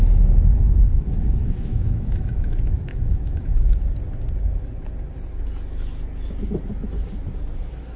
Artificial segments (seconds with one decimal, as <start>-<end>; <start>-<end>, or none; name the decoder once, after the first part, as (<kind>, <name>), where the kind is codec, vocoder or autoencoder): 1.4-3.8 (autoencoder, DAC-VAE)